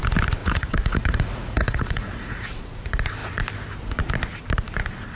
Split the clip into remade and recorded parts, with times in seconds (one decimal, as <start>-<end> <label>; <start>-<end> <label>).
0.0-0.4 recorded; 0.4-2.7 remade; 2.7-5.2 recorded